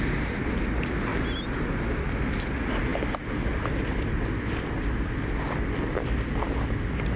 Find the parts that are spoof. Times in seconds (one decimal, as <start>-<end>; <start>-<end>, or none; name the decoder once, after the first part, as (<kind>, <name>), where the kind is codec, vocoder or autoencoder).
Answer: none